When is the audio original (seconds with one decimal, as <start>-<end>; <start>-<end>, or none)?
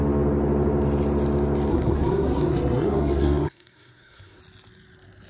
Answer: 0.0-1.7; 4.4-5.3